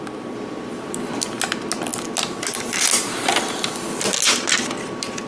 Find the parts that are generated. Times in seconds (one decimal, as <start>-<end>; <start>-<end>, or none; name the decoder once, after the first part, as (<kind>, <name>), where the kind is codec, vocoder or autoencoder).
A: none